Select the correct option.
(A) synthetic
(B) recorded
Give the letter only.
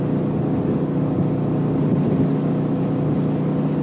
B